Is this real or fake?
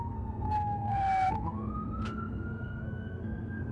fake